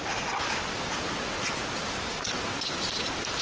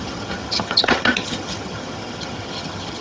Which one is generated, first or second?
second